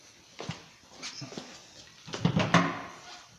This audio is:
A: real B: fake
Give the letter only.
A